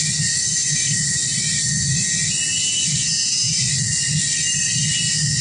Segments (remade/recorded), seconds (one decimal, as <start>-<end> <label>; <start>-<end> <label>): 0.0-5.4 recorded